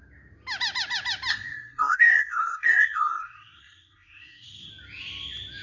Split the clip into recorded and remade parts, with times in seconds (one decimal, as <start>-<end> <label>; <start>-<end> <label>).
0.0-1.3 recorded; 1.3-4.7 remade; 4.7-5.6 recorded